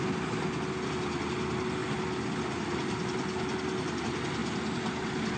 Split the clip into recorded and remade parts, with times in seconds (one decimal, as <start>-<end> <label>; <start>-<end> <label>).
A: 0.0-5.4 recorded